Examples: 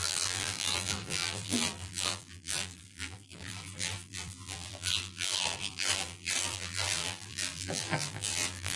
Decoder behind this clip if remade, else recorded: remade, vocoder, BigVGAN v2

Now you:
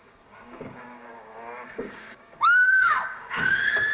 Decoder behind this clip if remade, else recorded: remade, codec, DAC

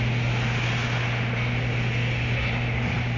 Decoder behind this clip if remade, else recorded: recorded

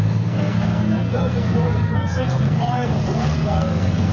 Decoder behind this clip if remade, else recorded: remade, codec, SNAC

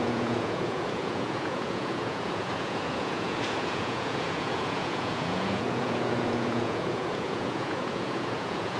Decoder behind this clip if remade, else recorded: remade, vocoder, Vocos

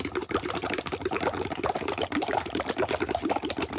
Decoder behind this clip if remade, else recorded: remade, vocoder, BigVGAN v2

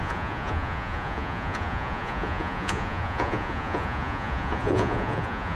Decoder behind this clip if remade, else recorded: remade, vocoder, Vocos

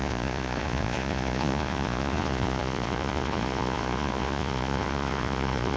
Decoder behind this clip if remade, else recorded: remade, vocoder, Vocos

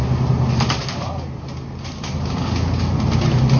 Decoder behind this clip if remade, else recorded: recorded